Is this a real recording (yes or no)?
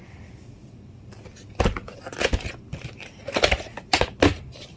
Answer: yes